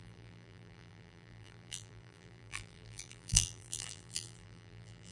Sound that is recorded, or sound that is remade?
remade